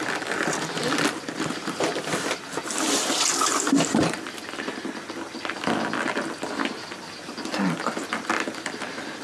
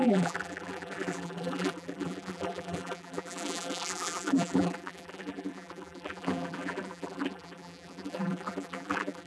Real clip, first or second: first